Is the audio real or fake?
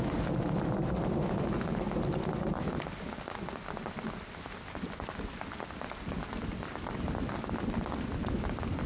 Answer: real